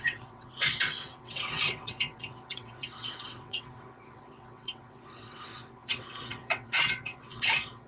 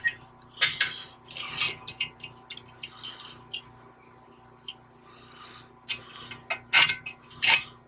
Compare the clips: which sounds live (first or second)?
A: second